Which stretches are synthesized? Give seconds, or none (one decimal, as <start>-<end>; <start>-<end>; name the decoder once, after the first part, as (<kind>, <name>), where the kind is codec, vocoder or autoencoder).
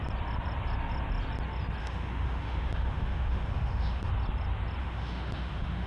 1.8-4.1 (autoencoder, DAC-VAE); 4.8-5.9